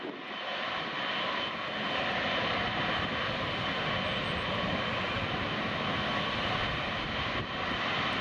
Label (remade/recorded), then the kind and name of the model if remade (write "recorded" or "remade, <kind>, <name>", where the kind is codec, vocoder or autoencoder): recorded